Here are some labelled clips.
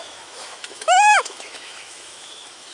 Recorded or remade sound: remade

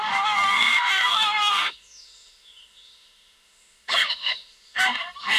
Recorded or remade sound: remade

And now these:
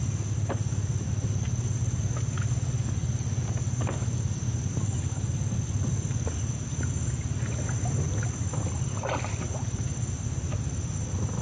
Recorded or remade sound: recorded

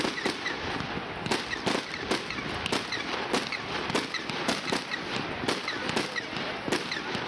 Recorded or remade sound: recorded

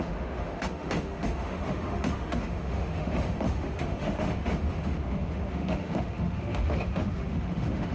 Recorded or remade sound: remade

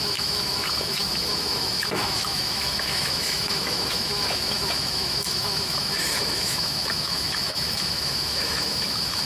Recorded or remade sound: remade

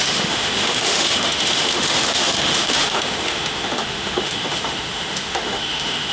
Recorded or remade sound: remade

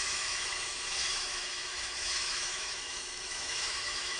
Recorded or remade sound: remade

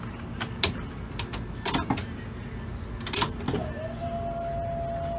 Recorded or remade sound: recorded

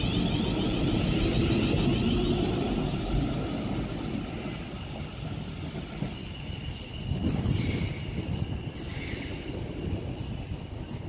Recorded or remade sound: recorded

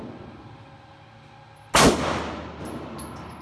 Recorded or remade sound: recorded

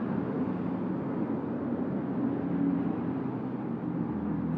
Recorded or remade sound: recorded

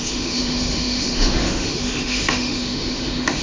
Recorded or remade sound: remade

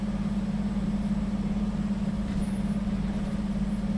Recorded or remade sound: recorded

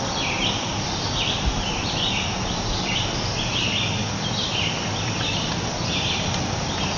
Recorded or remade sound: recorded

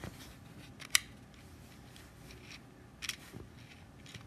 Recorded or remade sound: recorded